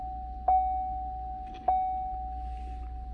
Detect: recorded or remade recorded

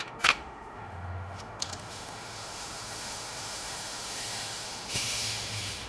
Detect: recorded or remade remade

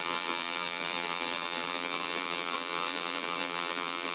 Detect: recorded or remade remade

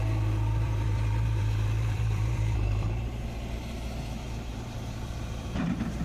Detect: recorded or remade remade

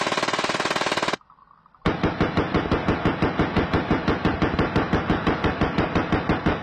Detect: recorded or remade recorded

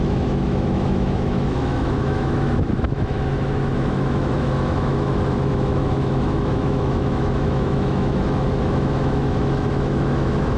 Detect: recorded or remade remade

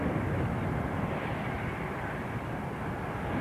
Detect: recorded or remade recorded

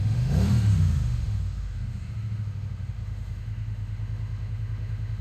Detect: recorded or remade remade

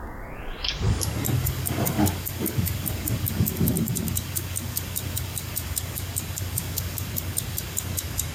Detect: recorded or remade remade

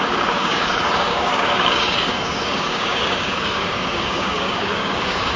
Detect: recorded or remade remade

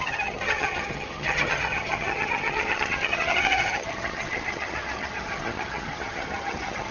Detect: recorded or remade remade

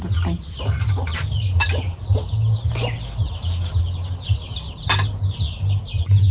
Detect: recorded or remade recorded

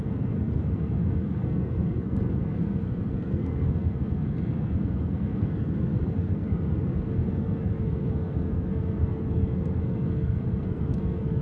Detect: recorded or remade remade